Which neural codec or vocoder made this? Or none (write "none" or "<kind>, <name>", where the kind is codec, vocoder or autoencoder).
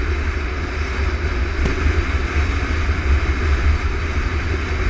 none